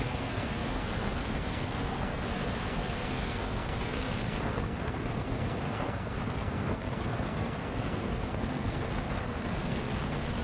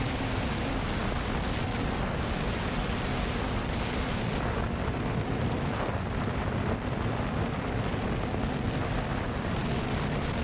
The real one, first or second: second